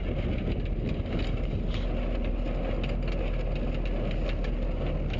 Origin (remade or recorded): recorded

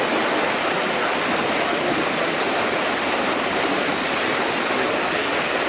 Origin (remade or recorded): recorded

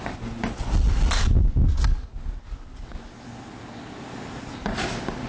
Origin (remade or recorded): recorded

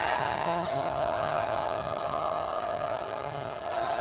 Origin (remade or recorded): remade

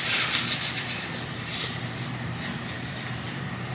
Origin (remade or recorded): recorded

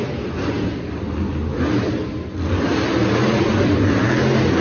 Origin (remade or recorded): recorded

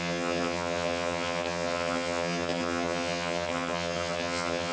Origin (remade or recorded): remade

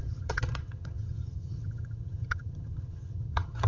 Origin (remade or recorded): remade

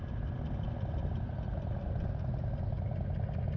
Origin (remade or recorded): recorded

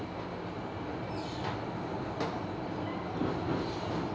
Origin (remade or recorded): recorded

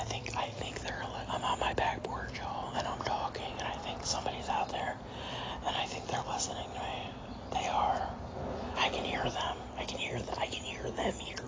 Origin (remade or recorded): recorded